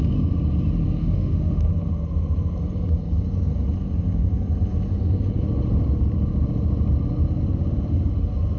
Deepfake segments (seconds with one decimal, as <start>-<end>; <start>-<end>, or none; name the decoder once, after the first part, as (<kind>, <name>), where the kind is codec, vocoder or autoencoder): 1.0-1.7 (autoencoder, DAC-VAE)